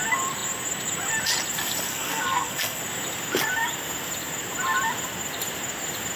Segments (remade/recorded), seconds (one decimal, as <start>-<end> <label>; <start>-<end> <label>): 0.0-1.9 recorded; 1.9-2.8 remade; 2.8-6.2 recorded